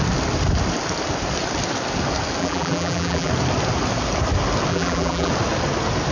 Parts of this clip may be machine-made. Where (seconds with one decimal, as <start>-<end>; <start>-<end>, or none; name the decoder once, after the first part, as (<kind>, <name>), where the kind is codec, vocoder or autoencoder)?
2.4-3.3 (vocoder, BigVGAN v2); 4.7-5.3